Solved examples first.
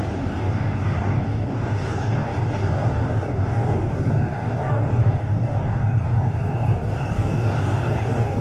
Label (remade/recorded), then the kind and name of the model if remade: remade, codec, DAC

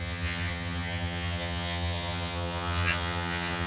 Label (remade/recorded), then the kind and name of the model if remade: remade, vocoder, HiFi-GAN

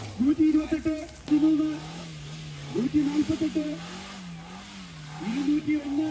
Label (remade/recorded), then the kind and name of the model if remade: recorded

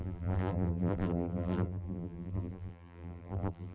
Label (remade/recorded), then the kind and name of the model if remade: remade, vocoder, BigVGAN v2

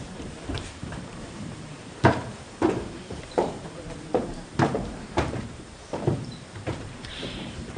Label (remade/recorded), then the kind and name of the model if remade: remade, vocoder, BigVGAN v2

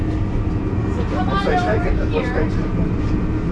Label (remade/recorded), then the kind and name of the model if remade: recorded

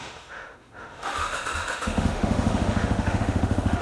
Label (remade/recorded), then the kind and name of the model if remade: remade, autoencoder, DAC-VAE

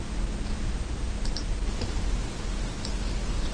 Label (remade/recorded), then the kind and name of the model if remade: recorded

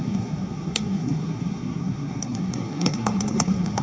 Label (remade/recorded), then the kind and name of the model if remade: remade, codec, SNAC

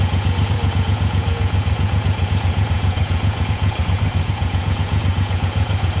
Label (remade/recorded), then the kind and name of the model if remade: remade, vocoder, Vocos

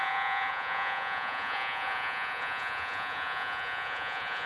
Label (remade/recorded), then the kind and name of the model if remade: remade, vocoder, Vocos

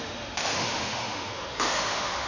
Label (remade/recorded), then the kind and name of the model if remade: remade, autoencoder, DAC-VAE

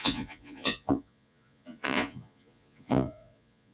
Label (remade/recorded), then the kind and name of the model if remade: remade, vocoder, Vocos